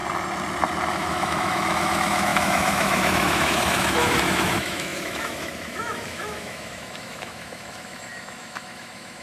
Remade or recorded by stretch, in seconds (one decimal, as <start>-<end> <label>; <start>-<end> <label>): 0.0-0.9 recorded; 0.9-9.2 remade